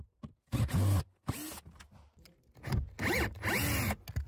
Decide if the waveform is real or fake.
real